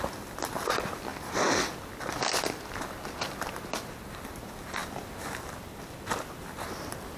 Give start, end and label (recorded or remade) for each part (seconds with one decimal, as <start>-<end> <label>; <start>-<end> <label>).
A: 0.0-7.2 recorded